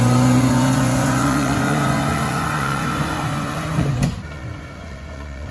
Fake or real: fake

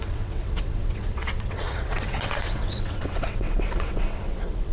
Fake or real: fake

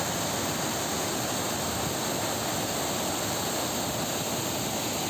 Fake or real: real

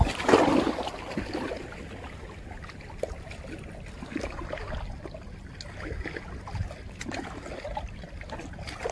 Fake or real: real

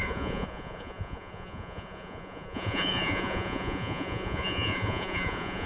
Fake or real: fake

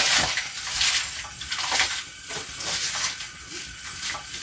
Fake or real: real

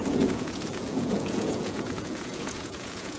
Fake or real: fake